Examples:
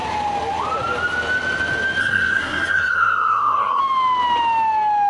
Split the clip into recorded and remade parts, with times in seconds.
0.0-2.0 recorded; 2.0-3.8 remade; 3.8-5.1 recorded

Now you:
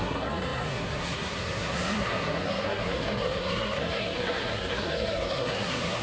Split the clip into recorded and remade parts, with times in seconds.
0.0-6.0 remade

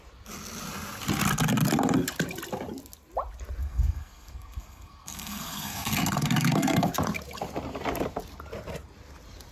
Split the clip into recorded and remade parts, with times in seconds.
0.0-3.6 recorded; 3.6-6.9 remade; 6.9-9.5 recorded

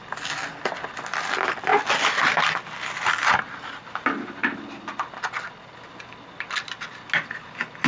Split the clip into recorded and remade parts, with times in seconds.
0.0-7.9 recorded